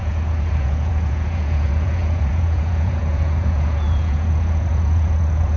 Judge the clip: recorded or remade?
remade